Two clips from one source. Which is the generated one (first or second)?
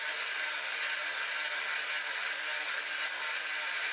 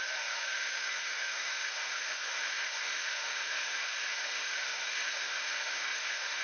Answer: second